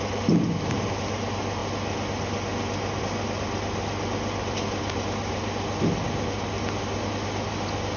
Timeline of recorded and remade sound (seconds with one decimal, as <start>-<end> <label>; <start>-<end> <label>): 0.0-8.0 recorded